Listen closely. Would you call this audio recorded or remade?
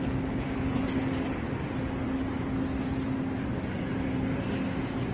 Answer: recorded